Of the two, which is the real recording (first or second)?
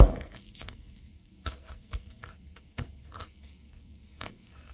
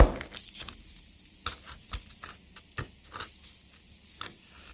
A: second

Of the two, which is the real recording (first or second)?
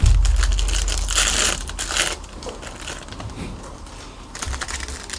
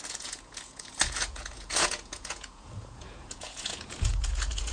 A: first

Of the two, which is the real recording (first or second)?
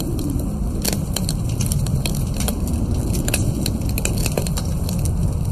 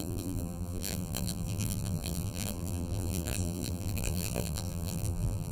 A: first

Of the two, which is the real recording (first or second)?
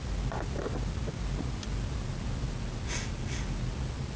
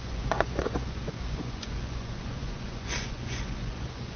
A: first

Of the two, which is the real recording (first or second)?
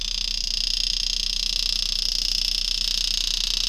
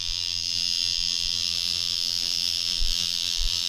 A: first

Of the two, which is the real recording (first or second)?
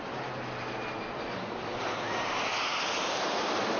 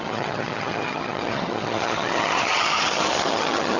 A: first